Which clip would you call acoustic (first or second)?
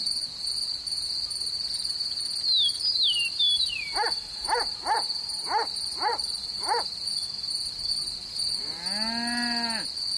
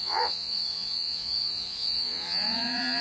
first